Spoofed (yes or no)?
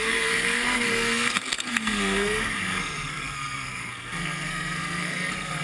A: yes